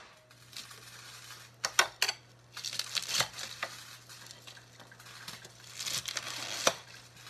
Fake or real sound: real